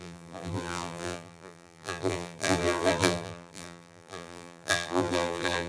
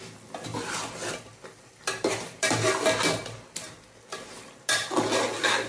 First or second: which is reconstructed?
first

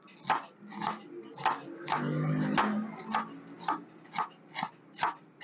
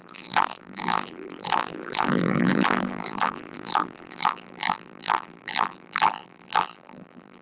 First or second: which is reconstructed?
second